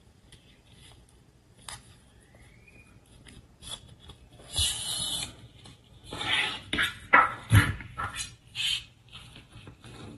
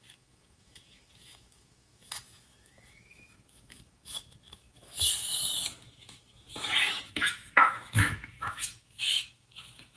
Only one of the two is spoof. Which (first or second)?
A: second